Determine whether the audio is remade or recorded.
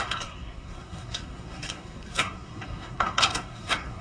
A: remade